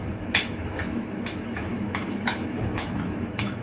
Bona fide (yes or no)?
no